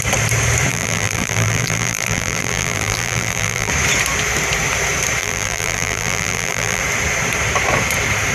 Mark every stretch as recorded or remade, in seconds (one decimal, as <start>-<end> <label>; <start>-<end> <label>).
0.0-0.7 recorded; 0.7-3.7 remade; 3.7-5.2 recorded; 5.2-6.8 remade; 6.8-8.3 recorded